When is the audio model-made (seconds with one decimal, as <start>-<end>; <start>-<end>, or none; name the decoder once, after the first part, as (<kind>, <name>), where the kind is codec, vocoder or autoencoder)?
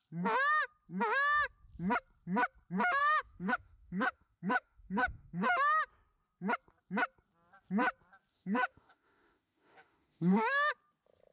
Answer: 3.0-5.5 (autoencoder, DAC-VAE); 8.3-10.7